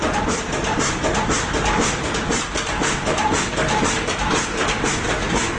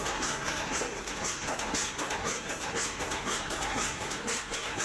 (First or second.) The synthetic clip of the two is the second